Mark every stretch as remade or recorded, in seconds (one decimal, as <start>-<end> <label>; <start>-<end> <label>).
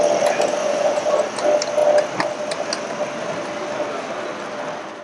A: 0.0-0.6 recorded; 0.6-1.1 remade; 1.1-5.0 recorded